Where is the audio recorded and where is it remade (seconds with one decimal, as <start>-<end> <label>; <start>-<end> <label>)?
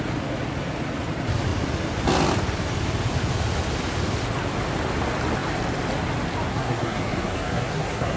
0.0-6.5 recorded; 6.5-8.2 remade